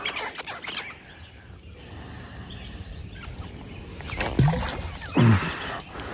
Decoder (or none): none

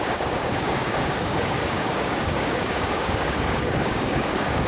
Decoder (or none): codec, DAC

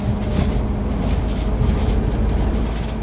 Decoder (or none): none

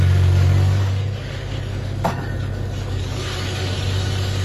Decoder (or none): codec, DAC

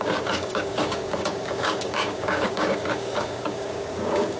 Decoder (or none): codec, DAC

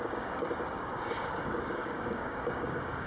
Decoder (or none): codec, DAC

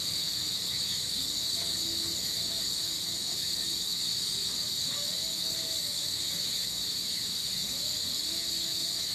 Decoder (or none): codec, DAC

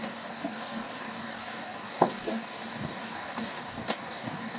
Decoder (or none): codec, DAC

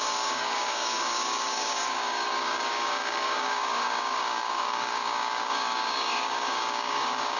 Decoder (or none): codec, DAC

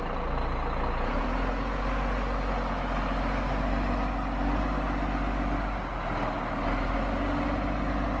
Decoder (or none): none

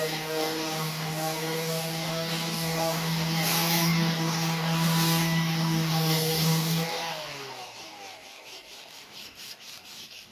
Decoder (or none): codec, DAC